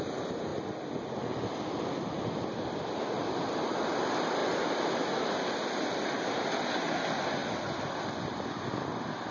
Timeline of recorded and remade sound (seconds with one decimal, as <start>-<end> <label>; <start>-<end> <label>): 0.0-9.3 recorded